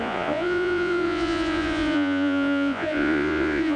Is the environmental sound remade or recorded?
remade